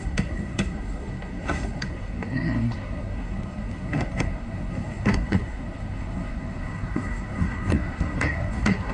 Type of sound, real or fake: fake